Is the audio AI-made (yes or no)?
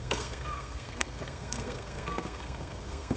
yes